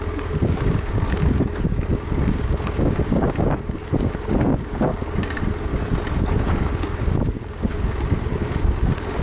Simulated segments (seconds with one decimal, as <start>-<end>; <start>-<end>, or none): 0.0-5.7; 6.4-9.2